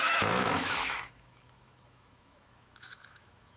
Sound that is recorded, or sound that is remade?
remade